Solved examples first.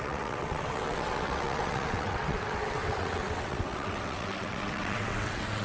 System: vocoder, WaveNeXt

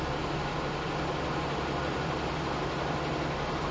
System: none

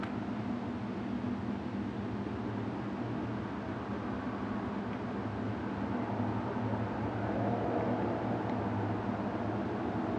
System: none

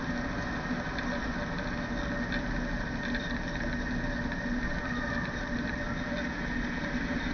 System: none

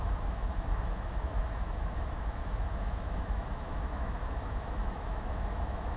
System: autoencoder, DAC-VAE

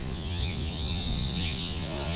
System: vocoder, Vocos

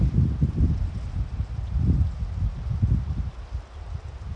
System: none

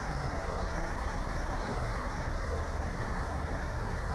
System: codec, SNAC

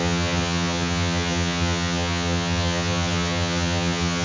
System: vocoder, HiFi-GAN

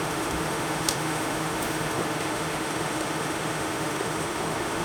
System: autoencoder, DAC-VAE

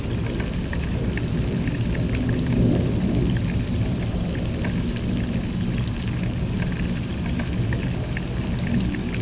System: none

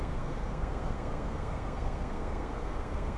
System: codec, SNAC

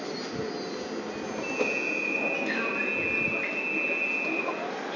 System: none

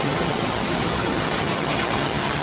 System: vocoder, HiFi-GAN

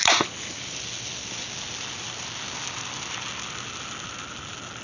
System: none